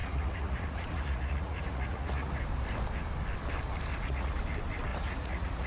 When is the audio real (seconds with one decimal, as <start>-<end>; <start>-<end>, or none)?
2.4-3.9; 4.4-4.9